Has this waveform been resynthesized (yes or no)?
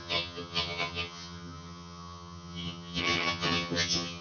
yes